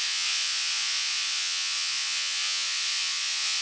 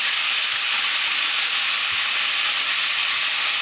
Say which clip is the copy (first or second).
first